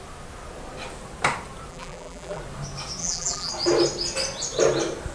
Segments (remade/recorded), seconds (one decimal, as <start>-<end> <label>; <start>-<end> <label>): 0.0-1.7 recorded; 1.7-2.4 remade; 2.4-3.0 recorded; 3.0-3.5 remade; 3.5-5.1 recorded